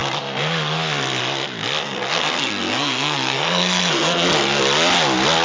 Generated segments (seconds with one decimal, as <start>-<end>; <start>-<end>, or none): 1.8-4.6